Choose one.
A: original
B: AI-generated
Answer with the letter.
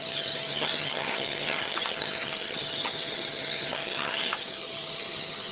B